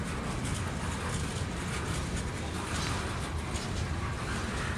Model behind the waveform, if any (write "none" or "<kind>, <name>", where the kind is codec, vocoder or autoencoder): none